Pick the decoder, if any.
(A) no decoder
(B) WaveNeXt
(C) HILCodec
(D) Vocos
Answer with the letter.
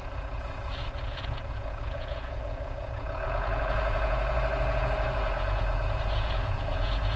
D